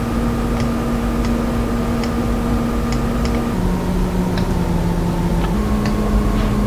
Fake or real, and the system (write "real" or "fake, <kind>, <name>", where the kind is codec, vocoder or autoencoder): real